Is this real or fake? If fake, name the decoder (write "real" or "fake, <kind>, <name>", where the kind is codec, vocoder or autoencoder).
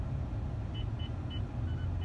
real